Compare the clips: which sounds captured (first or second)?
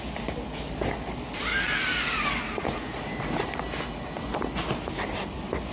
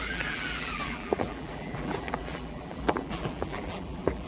first